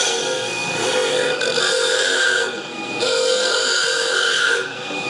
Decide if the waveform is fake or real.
fake